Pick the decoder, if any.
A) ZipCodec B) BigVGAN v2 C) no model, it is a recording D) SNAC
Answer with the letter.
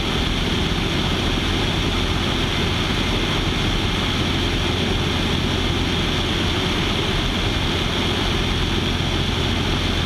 C